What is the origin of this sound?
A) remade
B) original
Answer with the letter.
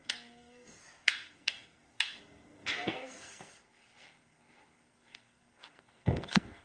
A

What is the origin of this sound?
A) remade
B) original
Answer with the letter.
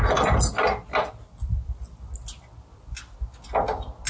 B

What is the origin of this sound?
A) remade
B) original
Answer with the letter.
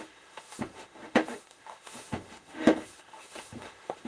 A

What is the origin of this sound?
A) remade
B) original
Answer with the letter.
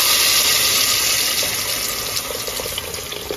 B